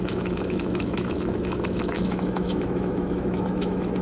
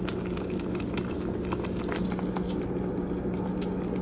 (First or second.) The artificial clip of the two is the first